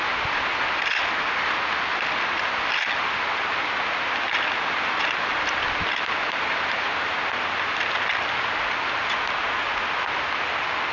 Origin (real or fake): real